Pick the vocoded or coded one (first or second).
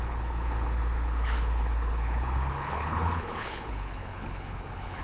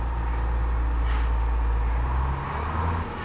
first